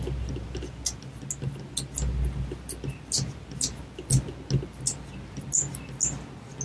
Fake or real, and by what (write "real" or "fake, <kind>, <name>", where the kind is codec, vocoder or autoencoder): real